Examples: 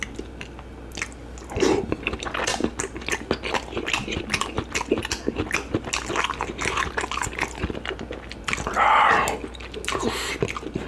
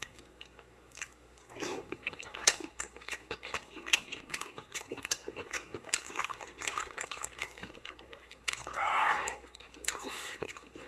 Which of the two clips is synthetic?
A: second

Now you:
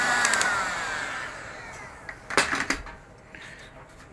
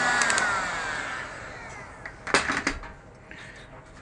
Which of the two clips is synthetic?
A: first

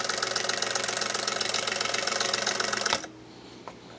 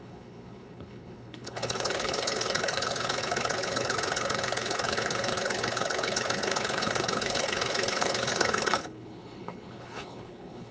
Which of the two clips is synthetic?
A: second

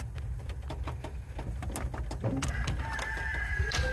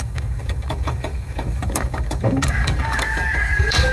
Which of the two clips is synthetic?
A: second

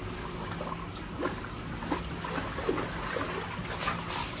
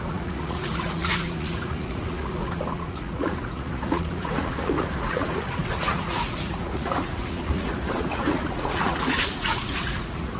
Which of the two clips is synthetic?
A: second